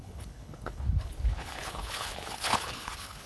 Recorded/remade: remade